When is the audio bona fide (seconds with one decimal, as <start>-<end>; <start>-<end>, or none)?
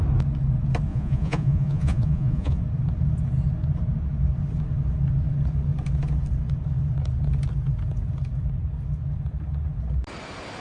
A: 0.0-0.9; 2.6-10.6